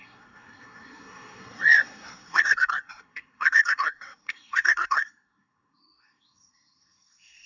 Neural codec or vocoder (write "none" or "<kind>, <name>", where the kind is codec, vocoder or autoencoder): codec, SNAC